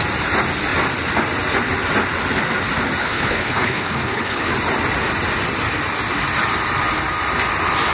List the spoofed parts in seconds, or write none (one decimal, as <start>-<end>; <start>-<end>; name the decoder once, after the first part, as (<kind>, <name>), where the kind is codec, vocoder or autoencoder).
3.0-4.5 (codec, HILCodec)